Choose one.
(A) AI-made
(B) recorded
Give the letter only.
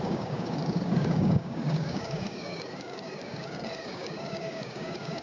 A